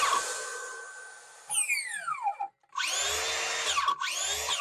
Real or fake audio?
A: real